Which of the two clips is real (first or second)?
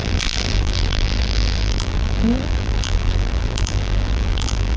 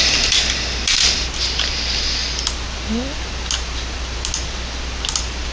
second